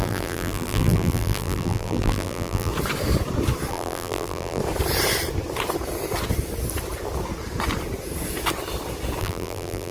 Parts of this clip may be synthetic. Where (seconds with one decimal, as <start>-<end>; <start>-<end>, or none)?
0.0-2.7; 3.7-4.6; 9.2-9.9